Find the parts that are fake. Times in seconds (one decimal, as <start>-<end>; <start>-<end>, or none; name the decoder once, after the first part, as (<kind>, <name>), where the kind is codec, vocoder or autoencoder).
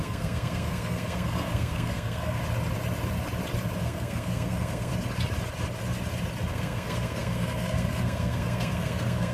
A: 0.0-2.4 (codec, SNAC); 3.8-4.9; 6.5-9.3